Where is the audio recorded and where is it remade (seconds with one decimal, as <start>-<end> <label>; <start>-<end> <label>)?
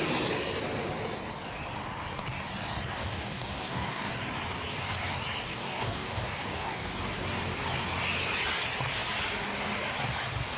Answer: 0.0-3.0 recorded; 3.0-4.1 remade; 4.1-5.5 recorded; 5.5-6.9 remade; 6.9-10.6 recorded